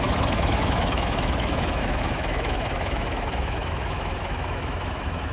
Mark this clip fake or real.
fake